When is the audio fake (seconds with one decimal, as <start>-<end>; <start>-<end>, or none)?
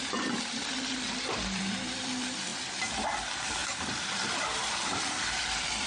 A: 0.0-2.5; 3.2-5.9